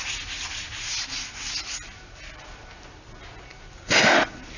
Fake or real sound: real